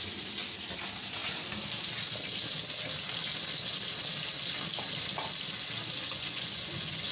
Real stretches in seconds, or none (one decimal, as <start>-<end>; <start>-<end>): 0.0-6.0

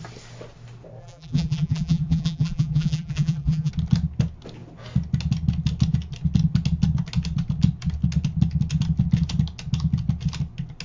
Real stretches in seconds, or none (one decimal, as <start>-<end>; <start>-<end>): 0.0-1.0; 3.7-10.8

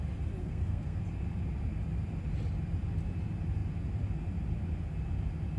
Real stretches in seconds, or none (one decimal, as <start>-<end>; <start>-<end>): 0.0-0.4; 1.0-5.6

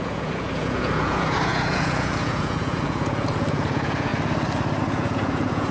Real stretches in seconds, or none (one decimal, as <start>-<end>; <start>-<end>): 4.1-4.8